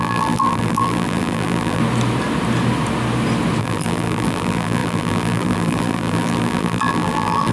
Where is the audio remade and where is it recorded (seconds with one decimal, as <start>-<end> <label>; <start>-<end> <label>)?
0.0-1.8 remade; 1.8-3.6 recorded; 3.6-7.5 remade